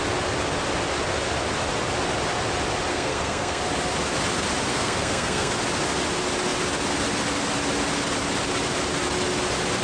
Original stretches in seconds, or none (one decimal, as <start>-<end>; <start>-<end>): 0.0-2.9; 3.6-4.7; 5.5-9.8